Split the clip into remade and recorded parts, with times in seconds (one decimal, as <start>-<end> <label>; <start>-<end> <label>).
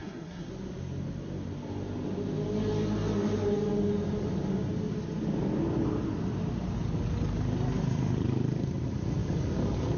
0.0-0.5 remade; 0.5-10.0 recorded